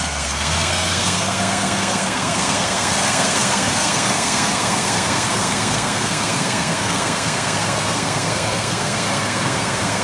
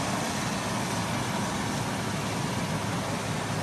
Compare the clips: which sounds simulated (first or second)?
first